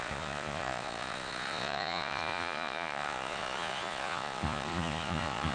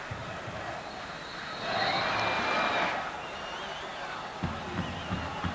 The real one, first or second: second